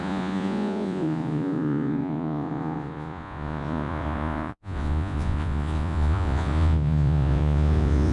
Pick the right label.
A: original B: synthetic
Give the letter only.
B